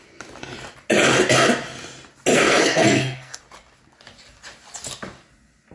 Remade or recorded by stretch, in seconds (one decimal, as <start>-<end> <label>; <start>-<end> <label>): 0.0-2.3 recorded; 2.3-3.4 remade; 3.4-5.7 recorded